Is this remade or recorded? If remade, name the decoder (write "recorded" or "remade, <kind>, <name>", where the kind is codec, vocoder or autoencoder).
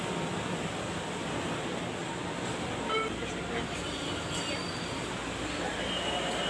recorded